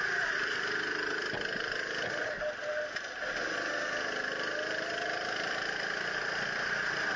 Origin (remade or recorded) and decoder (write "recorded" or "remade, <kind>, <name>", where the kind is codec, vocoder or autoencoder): recorded